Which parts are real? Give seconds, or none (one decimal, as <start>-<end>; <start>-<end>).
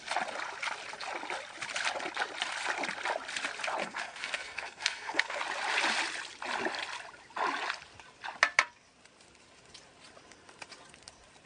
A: 0.0-3.8; 5.4-11.5